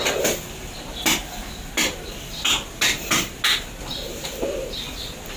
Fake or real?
real